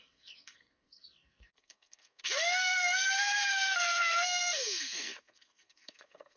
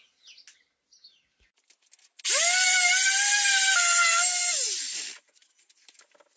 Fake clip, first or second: first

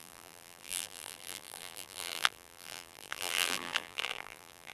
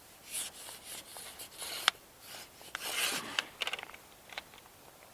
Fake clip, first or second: first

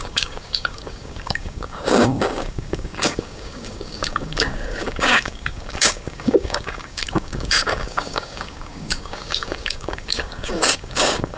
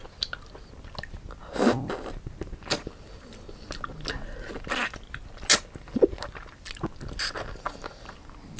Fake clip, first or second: first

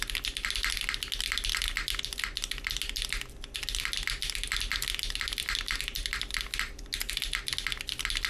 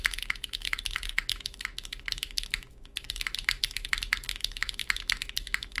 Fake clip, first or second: second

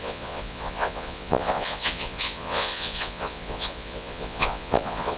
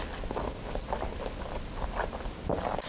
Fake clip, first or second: first